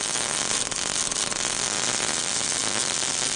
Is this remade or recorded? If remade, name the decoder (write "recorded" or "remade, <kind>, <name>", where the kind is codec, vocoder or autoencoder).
recorded